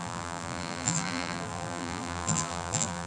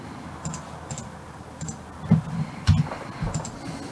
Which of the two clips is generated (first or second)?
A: first